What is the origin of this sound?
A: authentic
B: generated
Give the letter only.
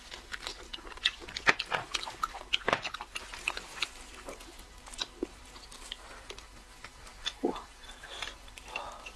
A